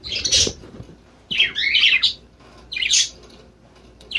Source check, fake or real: fake